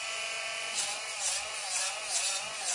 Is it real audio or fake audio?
fake